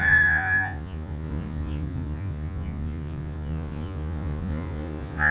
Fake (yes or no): yes